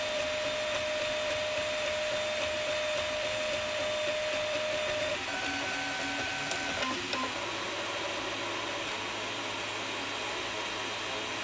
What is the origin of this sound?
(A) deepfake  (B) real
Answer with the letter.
B